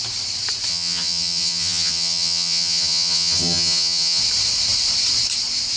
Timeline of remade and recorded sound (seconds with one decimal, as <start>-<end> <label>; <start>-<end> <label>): 0.0-0.7 recorded; 0.7-4.2 remade; 4.2-5.8 recorded